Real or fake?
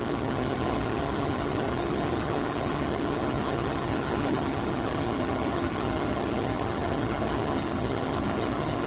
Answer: fake